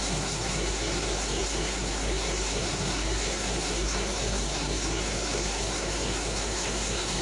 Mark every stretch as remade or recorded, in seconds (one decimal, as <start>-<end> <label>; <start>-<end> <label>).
0.0-7.2 remade